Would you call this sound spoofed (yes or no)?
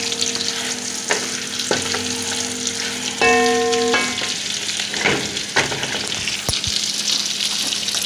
no